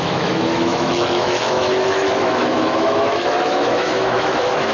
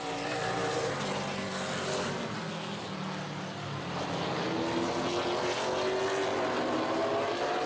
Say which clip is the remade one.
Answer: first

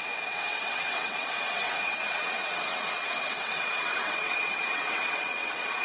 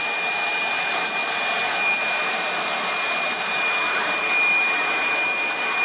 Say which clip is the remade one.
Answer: first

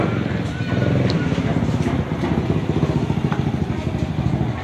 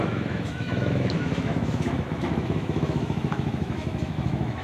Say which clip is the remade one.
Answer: second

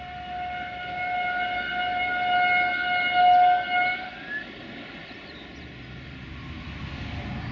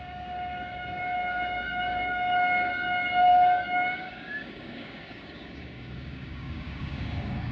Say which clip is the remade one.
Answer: second